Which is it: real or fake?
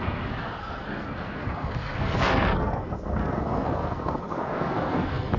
fake